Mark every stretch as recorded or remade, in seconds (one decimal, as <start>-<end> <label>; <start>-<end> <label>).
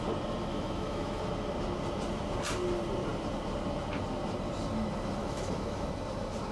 0.0-0.5 recorded; 0.5-1.2 remade; 1.2-5.2 recorded; 5.2-5.9 remade; 5.9-6.5 recorded